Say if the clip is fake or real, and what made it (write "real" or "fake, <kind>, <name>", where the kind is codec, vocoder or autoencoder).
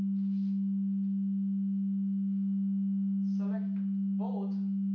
real